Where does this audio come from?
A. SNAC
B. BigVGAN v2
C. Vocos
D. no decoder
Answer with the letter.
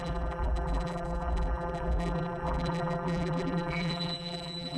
B